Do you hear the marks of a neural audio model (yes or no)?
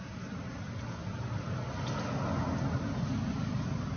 no